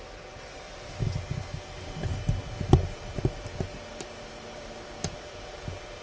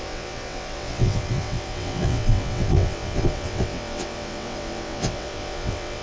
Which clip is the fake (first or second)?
second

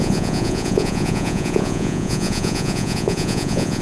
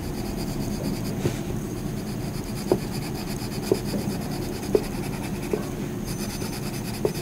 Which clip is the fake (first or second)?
first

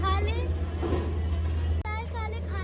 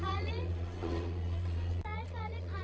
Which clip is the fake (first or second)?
second